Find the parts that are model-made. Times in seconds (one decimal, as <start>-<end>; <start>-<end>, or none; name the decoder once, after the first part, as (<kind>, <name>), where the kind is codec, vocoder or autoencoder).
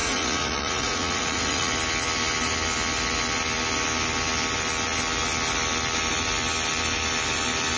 0.0-1.7 (vocoder, Vocos)